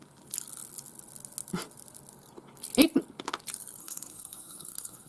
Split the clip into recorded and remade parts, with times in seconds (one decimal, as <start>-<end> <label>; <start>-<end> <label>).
0.0-3.8 recorded; 3.8-5.1 remade